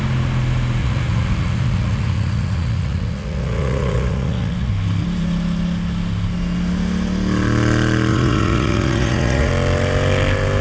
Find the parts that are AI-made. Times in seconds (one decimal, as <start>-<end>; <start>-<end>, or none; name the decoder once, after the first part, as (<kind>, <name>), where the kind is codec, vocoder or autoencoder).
0.8-4.7 (vocoder, Vocos); 8.1-9.5

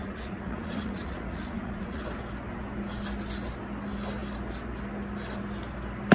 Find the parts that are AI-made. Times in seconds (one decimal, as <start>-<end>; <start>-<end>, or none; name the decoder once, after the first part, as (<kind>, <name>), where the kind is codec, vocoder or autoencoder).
0.0-2.0 (vocoder, Vocos)

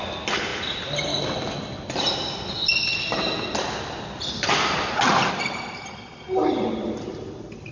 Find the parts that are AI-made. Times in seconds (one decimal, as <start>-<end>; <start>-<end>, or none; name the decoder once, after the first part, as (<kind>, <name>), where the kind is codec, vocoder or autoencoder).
none

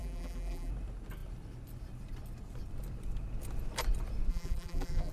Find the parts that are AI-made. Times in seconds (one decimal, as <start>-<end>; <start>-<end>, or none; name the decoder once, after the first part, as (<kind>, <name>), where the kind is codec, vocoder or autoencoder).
0.0-0.7 (vocoder, BigVGAN v2); 4.3-5.1

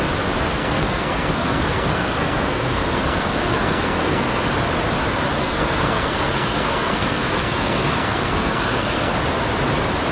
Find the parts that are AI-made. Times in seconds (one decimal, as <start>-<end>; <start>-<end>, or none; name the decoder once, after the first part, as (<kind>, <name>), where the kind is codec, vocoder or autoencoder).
0.5-4.4 (codec, SNAC); 5.4-9.1

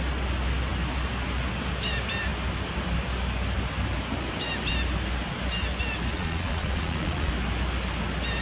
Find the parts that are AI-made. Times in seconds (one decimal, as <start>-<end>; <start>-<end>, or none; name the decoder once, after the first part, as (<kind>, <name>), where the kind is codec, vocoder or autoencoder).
6.1-7.3 (vocoder, Vocos)

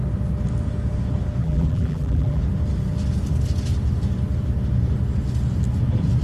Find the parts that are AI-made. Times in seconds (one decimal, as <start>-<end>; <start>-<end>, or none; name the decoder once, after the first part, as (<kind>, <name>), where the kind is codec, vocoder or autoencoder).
1.4-2.4 (vocoder, BigVGAN v2)

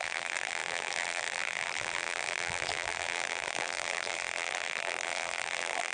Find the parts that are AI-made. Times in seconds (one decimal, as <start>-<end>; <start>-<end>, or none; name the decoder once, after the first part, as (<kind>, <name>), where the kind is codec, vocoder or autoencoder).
0.0-5.9 (vocoder, BigVGAN v2)